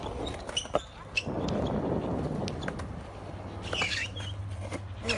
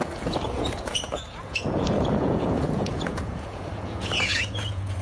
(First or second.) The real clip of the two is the first